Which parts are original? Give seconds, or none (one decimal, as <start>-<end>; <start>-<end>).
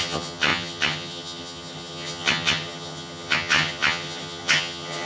none